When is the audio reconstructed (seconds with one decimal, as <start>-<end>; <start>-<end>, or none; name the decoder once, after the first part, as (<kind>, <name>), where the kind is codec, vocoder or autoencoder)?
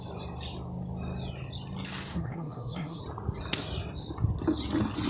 2.1-3.0 (codec, SNAC)